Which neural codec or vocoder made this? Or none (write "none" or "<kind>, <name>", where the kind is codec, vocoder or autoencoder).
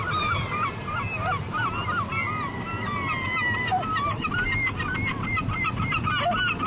none